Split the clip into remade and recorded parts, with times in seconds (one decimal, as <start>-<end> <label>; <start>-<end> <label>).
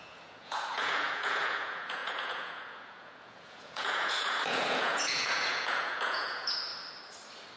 0.0-6.7 remade; 6.7-7.6 recorded